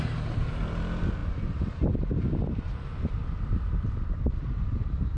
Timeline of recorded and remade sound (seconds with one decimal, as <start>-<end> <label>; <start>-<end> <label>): 0.0-5.2 recorded